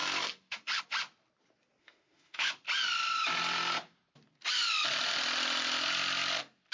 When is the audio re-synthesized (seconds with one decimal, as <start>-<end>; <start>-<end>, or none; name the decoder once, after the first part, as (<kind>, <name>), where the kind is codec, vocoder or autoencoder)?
1.8-2.5 (autoencoder, DAC-VAE)